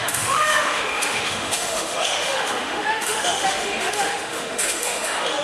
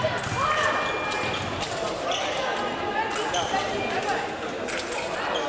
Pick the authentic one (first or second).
second